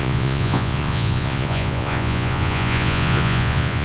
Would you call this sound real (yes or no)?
no